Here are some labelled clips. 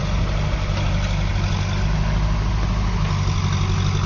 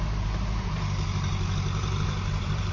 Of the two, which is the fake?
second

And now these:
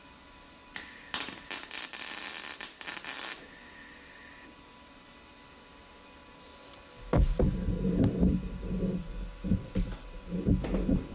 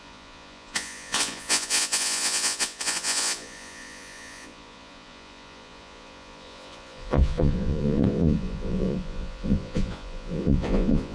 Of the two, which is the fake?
second